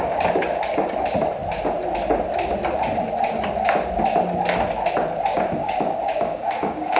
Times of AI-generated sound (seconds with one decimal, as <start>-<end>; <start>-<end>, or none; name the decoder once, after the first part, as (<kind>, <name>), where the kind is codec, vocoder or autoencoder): 0.0-0.6 (codec, DAC); 5.6-7.0